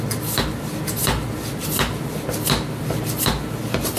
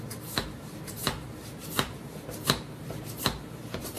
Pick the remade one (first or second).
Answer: second